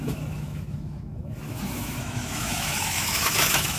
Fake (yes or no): yes